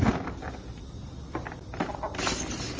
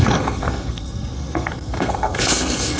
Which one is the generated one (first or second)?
second